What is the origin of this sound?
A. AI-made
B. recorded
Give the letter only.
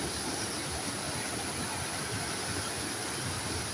B